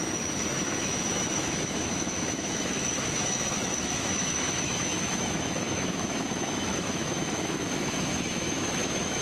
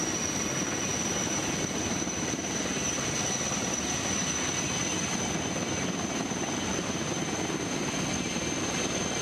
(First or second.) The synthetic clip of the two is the first